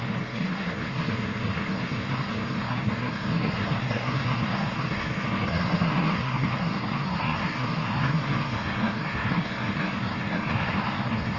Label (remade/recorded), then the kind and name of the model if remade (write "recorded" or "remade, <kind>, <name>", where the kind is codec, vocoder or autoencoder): remade, codec, SNAC